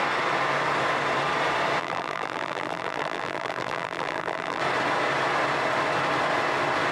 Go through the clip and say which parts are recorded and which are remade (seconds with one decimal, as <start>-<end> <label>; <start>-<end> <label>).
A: 0.0-1.8 recorded; 1.8-4.6 remade; 4.6-6.9 recorded